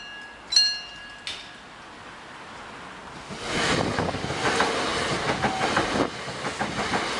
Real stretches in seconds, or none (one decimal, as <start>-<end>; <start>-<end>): 0.0-7.2